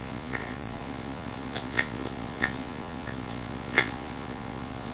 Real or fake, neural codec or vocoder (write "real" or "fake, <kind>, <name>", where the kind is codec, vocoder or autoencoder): fake, vocoder, Vocos